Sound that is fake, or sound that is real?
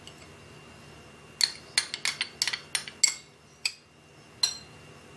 real